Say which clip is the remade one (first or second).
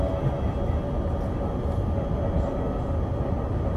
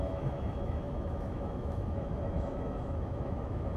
second